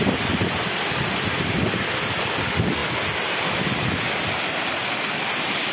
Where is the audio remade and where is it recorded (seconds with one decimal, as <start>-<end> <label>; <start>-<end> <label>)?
0.0-5.7 recorded